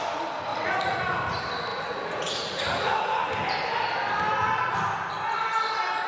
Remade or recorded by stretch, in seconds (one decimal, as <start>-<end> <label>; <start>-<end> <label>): 0.0-0.5 recorded; 0.5-1.0 remade; 1.0-1.7 recorded; 1.7-3.3 remade; 3.3-6.1 recorded